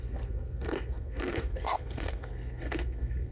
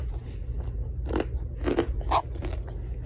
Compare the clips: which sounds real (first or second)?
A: second